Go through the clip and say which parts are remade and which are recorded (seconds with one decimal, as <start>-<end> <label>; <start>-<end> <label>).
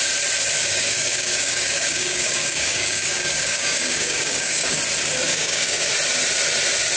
0.0-0.6 recorded; 0.6-4.8 remade; 4.8-5.3 recorded; 5.3-5.9 remade; 5.9-7.0 recorded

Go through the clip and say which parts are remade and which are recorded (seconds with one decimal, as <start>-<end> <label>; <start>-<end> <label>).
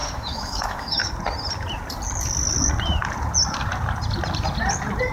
0.0-1.1 remade; 1.1-5.1 recorded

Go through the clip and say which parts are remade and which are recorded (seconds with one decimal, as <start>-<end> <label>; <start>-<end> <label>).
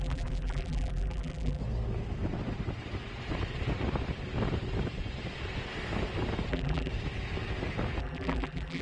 0.0-1.6 remade; 1.6-6.5 recorded; 6.5-6.9 remade; 6.9-8.0 recorded; 8.0-8.8 remade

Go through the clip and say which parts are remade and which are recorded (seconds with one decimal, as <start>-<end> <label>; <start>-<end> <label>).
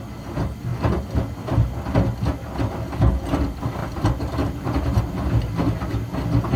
0.0-3.8 recorded; 3.8-5.0 remade; 5.0-6.6 recorded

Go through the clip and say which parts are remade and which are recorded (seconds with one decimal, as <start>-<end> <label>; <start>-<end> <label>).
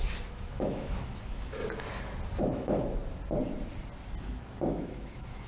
0.0-1.6 remade; 1.6-2.4 recorded; 2.4-3.0 remade; 3.0-4.2 recorded; 4.2-5.5 remade